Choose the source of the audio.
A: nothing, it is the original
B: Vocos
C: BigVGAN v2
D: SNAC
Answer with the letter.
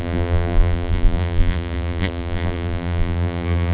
C